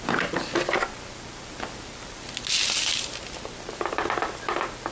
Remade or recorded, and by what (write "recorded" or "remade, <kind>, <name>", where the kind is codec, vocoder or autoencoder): recorded